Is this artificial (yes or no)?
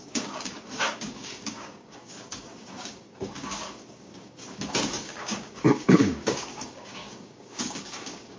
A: yes